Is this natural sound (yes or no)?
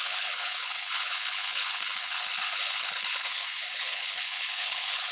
no